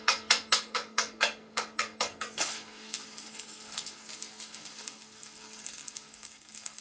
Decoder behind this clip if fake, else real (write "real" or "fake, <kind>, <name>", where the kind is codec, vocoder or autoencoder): fake, codec, SNAC